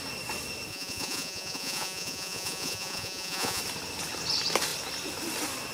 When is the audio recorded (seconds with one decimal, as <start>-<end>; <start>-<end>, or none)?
0.0-0.7; 3.6-5.7